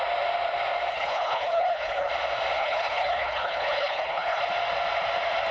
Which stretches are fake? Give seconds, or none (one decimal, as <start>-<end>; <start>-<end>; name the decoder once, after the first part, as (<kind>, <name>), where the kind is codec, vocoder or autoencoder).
0.9-2.1 (codec, HILCodec); 2.6-4.4